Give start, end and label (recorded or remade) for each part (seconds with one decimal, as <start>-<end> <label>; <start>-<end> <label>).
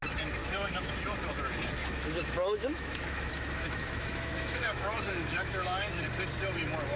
0.0-0.4 recorded; 0.4-0.9 remade; 0.9-1.8 recorded; 1.8-6.0 remade; 6.0-7.0 recorded